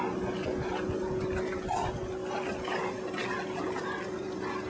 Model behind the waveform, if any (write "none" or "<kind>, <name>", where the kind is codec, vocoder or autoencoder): none